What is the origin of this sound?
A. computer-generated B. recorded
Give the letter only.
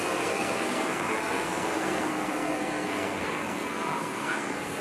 A